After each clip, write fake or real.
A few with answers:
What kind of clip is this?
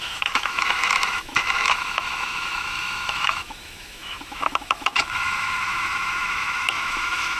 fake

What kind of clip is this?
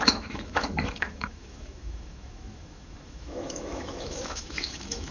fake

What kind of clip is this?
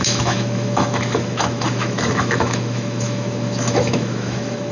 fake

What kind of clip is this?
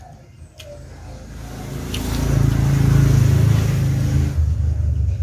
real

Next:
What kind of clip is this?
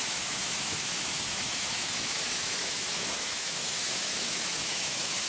fake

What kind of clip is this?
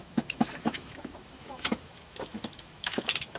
fake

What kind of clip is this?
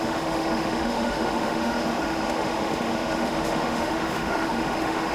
fake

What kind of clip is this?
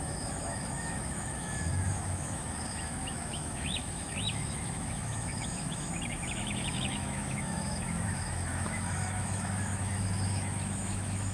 fake